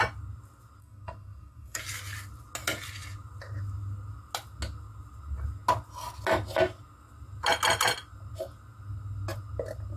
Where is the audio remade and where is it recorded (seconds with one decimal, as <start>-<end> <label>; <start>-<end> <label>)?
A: 0.0-0.8 recorded; 0.8-1.8 remade; 1.8-10.0 recorded

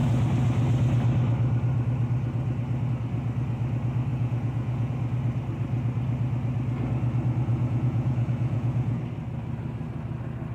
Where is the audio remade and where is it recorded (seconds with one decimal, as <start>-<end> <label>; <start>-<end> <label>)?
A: 0.0-4.1 recorded; 4.1-4.9 remade; 4.9-7.5 recorded; 7.5-9.0 remade; 9.0-10.5 recorded

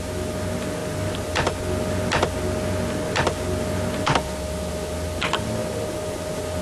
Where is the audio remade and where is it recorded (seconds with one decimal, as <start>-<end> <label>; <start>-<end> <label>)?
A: 0.0-6.6 recorded

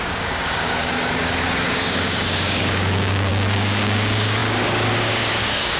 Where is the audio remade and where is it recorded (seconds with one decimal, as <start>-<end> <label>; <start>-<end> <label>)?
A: 0.0-5.8 remade

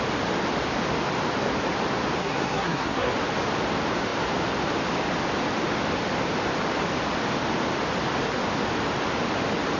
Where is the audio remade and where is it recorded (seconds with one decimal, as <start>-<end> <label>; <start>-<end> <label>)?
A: 0.0-2.2 recorded; 2.2-3.1 remade; 3.1-9.8 recorded

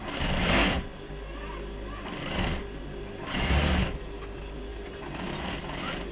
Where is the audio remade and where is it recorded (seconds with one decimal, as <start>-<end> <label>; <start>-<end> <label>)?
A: 0.0-6.1 recorded